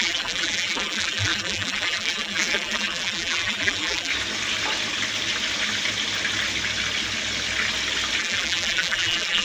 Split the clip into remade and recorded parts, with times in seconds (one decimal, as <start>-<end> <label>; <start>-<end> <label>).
0.0-4.1 remade; 4.1-8.2 recorded; 8.2-9.4 remade